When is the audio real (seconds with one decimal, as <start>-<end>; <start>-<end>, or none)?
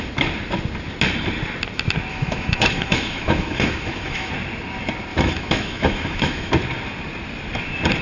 0.0-2.1; 4.3-5.1; 6.5-8.0